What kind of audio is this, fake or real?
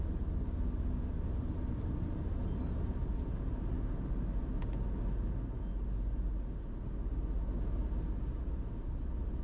real